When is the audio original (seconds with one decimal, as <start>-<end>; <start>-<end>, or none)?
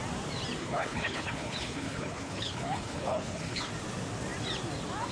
0.0-0.6; 3.7-5.1